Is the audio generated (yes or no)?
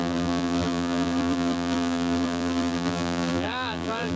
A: yes